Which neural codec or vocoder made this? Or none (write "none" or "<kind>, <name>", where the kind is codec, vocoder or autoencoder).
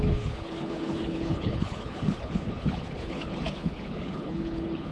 codec, HILCodec